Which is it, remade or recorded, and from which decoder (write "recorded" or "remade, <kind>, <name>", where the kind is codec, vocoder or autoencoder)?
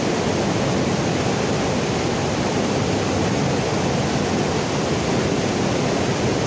recorded